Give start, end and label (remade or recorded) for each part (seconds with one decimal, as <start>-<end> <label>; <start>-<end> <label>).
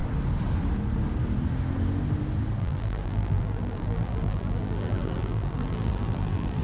0.0-2.6 recorded; 2.6-6.6 remade